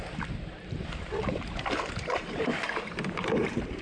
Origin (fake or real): fake